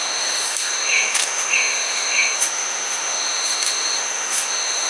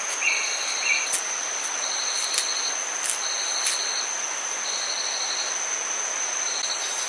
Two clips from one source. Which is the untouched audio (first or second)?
second